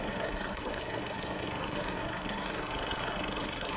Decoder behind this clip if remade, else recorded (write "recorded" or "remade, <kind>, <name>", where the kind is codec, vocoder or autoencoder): remade, codec, SNAC